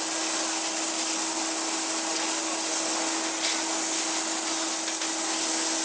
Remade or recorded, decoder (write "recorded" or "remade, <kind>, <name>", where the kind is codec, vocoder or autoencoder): recorded